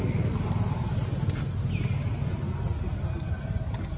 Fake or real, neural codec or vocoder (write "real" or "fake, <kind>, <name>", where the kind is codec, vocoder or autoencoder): real